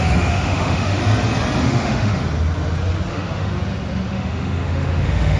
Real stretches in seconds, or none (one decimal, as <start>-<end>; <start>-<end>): 1.0-1.6; 2.2-3.1; 3.5-4.1

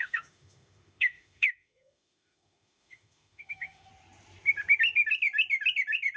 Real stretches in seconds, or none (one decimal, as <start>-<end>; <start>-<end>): 3.9-6.2

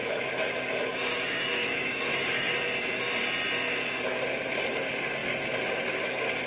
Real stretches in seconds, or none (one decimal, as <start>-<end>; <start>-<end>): 2.5-6.5

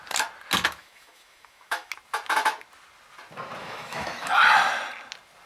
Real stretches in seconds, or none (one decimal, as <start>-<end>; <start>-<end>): 0.0-0.8; 1.9-3.6; 4.4-5.5

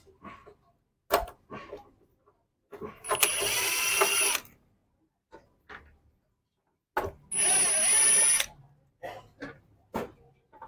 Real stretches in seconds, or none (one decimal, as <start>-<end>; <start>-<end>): 0.0-10.7